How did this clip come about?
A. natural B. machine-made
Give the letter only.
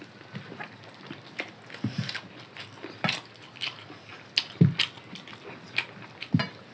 A